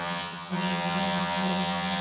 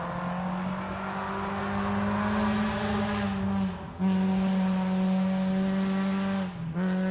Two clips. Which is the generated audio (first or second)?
first